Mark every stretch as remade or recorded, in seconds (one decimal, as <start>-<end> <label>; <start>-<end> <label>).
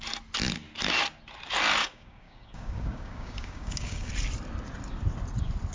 0.0-1.8 recorded; 1.8-4.1 remade; 4.1-5.7 recorded